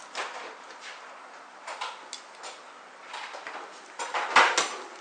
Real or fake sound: real